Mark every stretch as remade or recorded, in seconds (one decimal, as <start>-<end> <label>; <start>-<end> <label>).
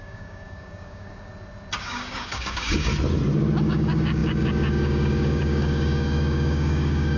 0.0-1.3 remade; 1.3-1.8 recorded; 1.8-2.9 remade; 2.9-3.6 recorded; 3.6-7.2 remade